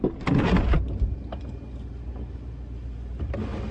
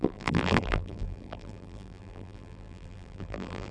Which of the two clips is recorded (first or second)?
first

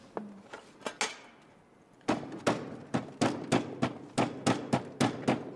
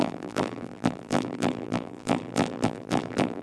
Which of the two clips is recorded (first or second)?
first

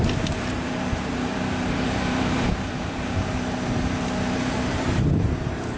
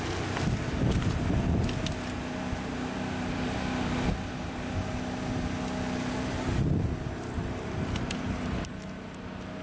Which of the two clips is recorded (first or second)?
second